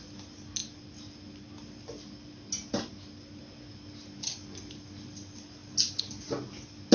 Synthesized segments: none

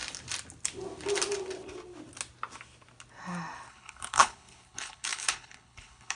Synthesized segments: 3.7-6.2

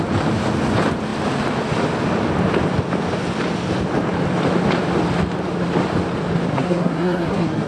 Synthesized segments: 6.5-7.7

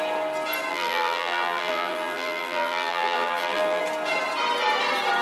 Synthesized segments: 0.7-3.8

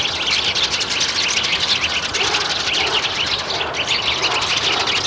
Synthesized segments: none

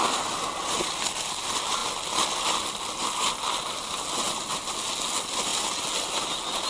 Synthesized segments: none

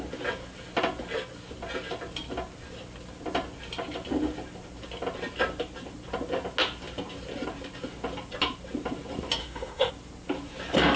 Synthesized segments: 9.4-9.9

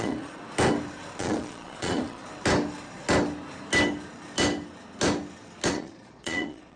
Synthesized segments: 0.0-0.4; 1.2-2.2; 5.7-6.8